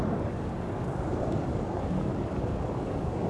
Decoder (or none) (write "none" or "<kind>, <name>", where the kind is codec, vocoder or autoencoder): codec, DAC